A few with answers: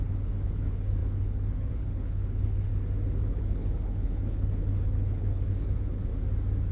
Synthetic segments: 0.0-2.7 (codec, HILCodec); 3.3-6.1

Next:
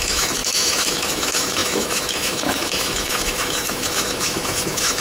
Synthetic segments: 0.0-5.0 (autoencoder, DAC-VAE)

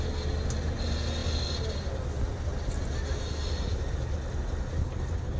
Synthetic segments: none

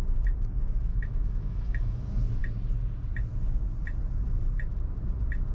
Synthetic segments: 0.9-2.0 (autoencoder, DAC-VAE)

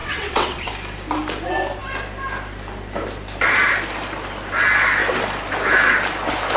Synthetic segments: 0.0-0.7 (vocoder, WaveNeXt)

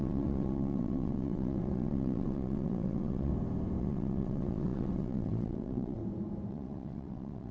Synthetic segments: 0.0-3.3 (vocoder, WaveNeXt); 3.8-6.0; 6.5-7.5

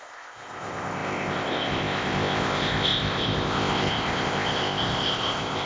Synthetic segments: 0.0-5.7 (codec, ZipCodec)

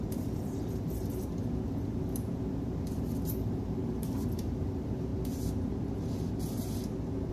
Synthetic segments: 0.0-5.1 (vocoder, BigVGAN v2)